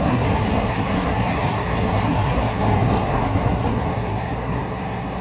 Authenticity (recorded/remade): remade